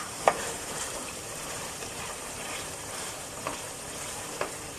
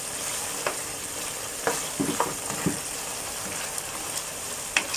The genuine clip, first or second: second